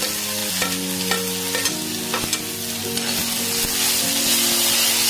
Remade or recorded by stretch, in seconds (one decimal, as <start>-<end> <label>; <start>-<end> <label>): 0.0-5.1 recorded